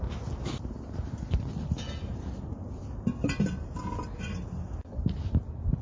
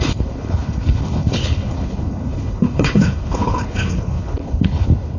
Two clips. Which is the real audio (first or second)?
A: first